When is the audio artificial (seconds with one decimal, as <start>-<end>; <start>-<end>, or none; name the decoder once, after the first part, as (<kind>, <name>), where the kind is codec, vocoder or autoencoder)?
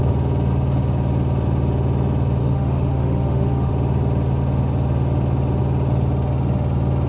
2.4-3.7 (autoencoder, DAC-VAE)